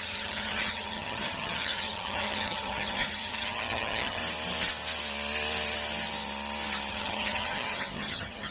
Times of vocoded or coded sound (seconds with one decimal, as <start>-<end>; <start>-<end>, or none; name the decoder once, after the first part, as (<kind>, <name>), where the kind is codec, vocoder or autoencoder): 0.0-4.2 (vocoder, HiFi-GAN); 6.9-8.5

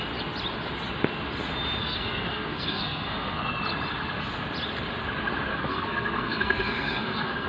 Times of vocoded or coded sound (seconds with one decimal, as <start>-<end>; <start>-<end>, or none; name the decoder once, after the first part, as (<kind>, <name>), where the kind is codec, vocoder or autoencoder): 1.8-3.6 (codec, SNAC); 5.5-7.5

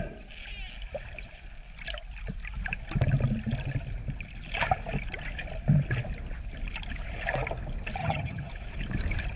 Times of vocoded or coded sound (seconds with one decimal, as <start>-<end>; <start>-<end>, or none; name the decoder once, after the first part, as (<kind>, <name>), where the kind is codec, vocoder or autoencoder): 8.0-8.5 (vocoder, HiFi-GAN)

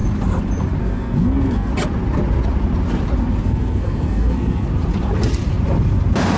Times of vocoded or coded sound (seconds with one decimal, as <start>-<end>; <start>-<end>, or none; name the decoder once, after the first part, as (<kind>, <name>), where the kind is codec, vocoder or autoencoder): 0.8-1.7 (codec, SNAC); 3.4-4.7

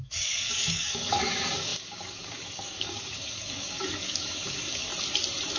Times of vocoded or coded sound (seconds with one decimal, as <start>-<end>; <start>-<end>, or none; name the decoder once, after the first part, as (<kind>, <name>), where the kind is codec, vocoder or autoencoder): 0.0-4.9 (codec, DAC)

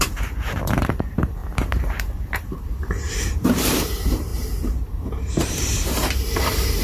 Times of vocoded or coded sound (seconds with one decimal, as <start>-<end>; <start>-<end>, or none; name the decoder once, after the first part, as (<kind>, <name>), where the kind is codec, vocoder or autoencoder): 0.0-6.8 (vocoder, BigVGAN v2)

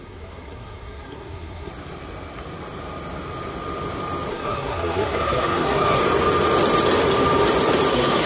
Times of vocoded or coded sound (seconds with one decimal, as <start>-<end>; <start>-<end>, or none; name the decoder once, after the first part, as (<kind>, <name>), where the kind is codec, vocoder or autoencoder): 0.0-1.7 (codec, SNAC); 4.3-6.0; 7.9-8.3